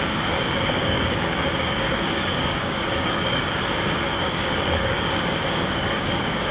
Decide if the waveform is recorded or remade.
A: remade